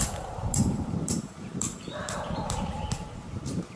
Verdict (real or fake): fake